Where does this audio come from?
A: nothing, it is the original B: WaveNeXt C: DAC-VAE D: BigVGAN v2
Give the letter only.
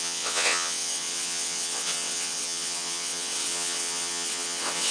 B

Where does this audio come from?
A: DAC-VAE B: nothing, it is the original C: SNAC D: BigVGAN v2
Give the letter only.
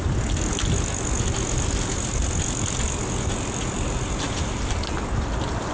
B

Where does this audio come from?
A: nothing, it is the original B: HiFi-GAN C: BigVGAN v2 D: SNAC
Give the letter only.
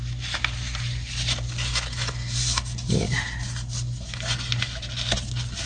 A